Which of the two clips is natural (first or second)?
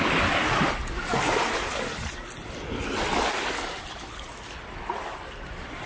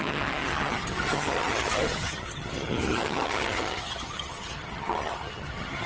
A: first